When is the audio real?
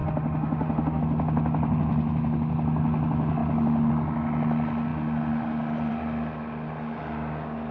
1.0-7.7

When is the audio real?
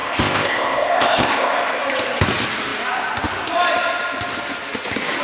1.8-5.2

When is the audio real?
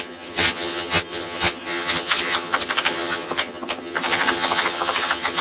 none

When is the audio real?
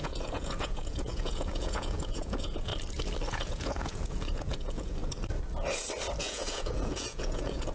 2.7-3.3; 5.0-6.2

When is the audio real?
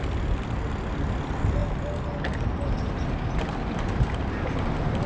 0.0-5.1